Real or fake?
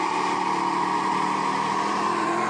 fake